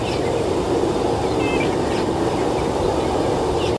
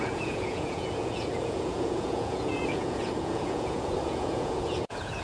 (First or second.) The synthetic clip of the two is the second